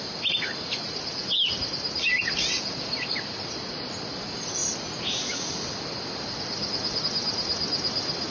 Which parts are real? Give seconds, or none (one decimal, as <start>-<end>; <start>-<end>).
0.0-8.3